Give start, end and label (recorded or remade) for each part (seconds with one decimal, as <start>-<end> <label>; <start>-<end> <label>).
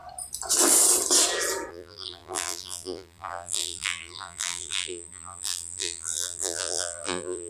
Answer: 0.0-1.7 recorded; 1.7-7.5 remade